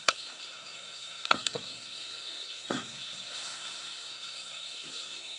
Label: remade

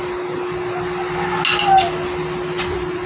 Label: recorded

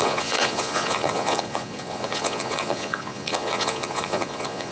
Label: remade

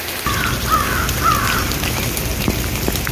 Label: recorded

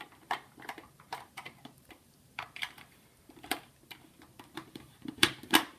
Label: remade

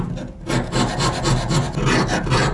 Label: recorded